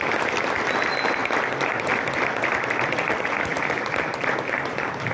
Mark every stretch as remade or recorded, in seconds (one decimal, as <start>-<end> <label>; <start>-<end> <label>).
0.0-5.1 recorded